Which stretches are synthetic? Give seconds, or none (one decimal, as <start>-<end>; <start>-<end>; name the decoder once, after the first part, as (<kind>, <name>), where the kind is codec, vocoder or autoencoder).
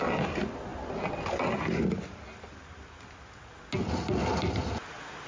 none